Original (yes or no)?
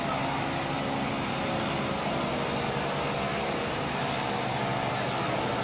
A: yes